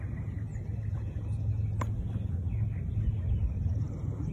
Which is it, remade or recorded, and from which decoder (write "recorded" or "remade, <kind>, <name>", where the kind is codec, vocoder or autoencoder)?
recorded